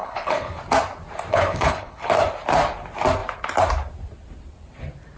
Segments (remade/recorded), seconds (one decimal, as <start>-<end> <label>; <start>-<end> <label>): 0.0-0.6 remade; 0.6-1.3 recorded; 1.3-2.1 remade; 2.1-5.2 recorded